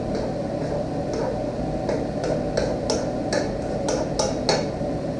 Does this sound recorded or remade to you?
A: recorded